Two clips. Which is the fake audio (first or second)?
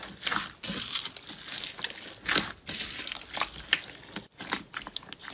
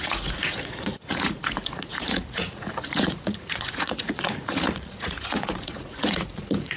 second